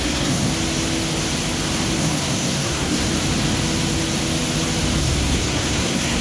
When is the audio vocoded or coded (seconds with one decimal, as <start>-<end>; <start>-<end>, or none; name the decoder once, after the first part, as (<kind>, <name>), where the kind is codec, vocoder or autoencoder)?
0.0-0.5 (codec, SNAC); 2.0-3.1; 5.0-6.2